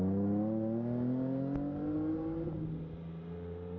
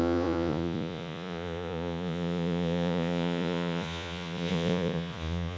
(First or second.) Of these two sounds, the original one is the first